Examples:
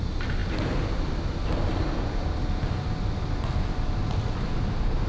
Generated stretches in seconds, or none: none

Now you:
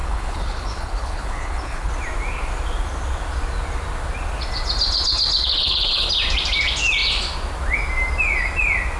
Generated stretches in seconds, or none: 0.0-1.9 (codec, HILCodec); 5.5-6.1